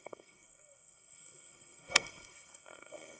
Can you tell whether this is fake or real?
fake